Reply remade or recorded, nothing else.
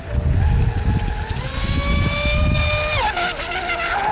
recorded